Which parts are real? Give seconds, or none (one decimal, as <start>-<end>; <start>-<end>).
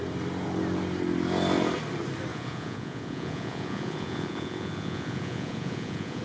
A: 0.0-2.3